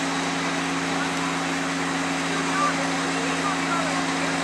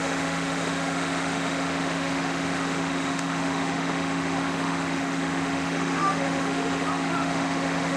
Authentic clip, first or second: first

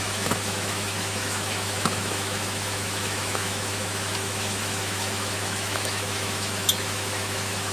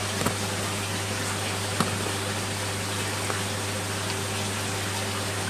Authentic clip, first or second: second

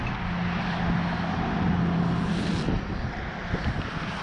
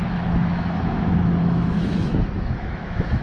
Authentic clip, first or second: first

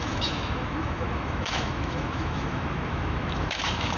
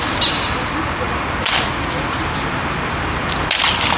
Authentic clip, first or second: second